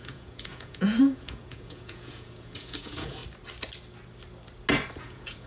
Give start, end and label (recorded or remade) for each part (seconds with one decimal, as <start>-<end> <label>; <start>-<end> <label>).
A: 0.0-3.2 remade; 3.2-5.0 recorded; 5.0-5.5 remade